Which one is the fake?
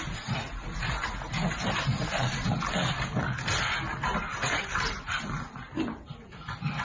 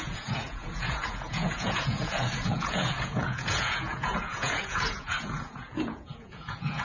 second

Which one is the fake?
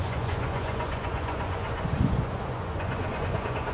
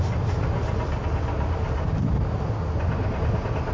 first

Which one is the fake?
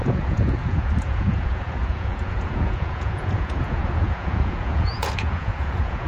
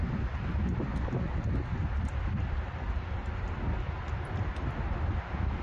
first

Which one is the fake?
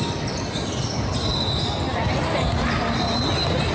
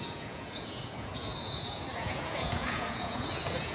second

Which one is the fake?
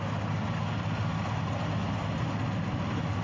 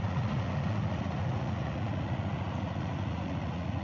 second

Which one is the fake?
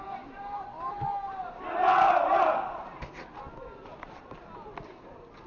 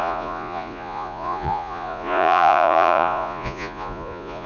second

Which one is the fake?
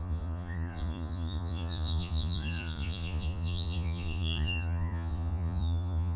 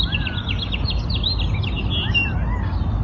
first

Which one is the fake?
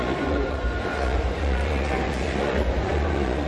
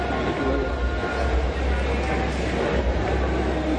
first